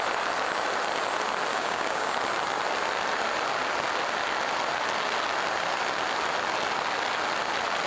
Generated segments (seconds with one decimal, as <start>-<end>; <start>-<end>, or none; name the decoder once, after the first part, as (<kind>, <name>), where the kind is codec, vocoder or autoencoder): 1.5-2.1 (codec, DAC)